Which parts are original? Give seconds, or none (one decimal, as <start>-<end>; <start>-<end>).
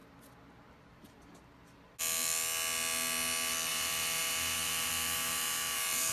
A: 0.0-3.7